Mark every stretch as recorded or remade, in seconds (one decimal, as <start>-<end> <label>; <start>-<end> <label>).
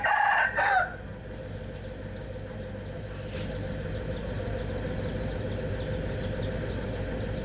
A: 0.0-7.4 recorded